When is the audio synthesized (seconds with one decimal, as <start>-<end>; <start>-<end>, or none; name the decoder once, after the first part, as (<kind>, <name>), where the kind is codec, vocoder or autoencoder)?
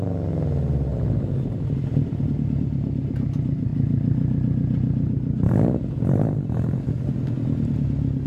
0.9-1.7 (vocoder, BigVGAN v2)